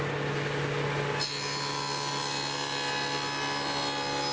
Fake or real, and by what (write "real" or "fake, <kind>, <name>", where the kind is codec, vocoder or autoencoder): real